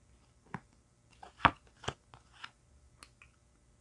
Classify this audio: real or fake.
real